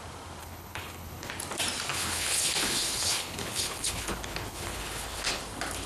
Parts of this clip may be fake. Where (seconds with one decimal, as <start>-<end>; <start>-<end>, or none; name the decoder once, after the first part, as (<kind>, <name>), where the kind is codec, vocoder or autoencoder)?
0.4-1.3 (codec, HILCodec); 1.9-5.4